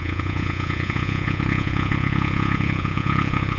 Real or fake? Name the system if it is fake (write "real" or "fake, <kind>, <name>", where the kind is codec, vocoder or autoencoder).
fake, vocoder, Vocos